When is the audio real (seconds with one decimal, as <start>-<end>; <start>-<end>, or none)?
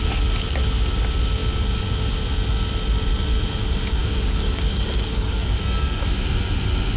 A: 0.0-4.0; 5.6-7.0